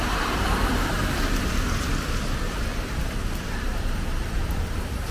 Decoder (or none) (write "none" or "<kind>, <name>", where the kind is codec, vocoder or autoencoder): vocoder, BigVGAN v2